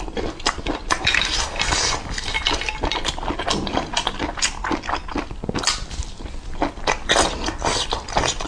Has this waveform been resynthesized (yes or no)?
no